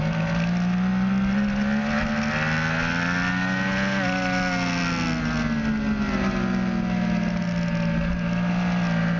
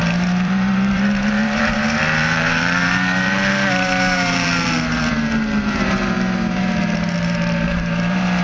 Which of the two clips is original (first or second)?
first